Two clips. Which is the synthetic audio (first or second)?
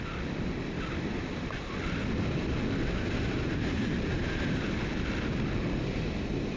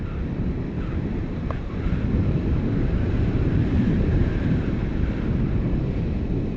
second